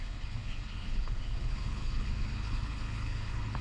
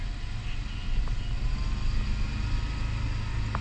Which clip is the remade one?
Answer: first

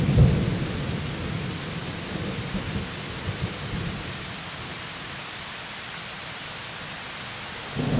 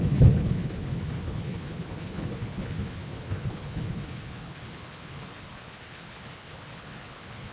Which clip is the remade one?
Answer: second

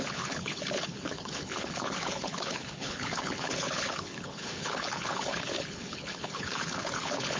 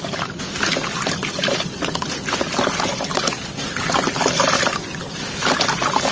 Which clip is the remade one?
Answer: first